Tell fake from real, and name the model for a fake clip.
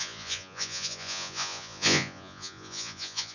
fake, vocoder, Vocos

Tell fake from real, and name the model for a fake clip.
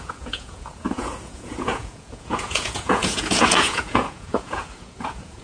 fake, vocoder, Vocos